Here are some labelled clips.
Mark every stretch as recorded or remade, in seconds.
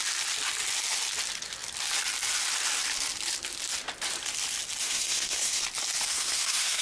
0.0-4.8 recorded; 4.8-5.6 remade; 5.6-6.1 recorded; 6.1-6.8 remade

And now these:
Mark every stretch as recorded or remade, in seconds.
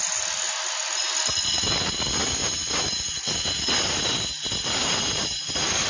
0.0-5.9 recorded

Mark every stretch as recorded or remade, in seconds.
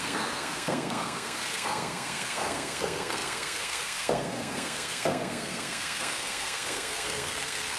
0.0-7.8 remade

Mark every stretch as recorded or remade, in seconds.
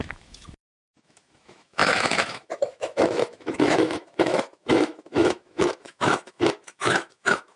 0.0-7.6 remade